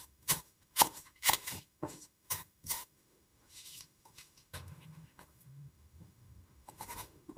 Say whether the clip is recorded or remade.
remade